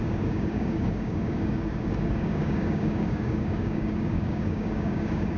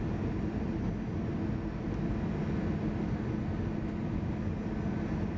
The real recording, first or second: second